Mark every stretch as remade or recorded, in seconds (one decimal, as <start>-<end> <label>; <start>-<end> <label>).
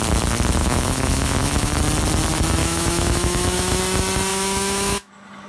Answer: 0.0-0.6 recorded; 0.6-1.7 remade; 1.7-2.6 recorded; 2.6-3.8 remade; 3.8-4.3 recorded; 4.3-5.1 remade; 5.1-5.5 recorded